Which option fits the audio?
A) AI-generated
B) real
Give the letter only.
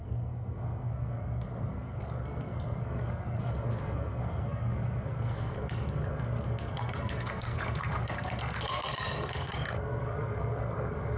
A